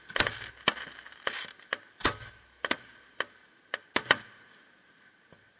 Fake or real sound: real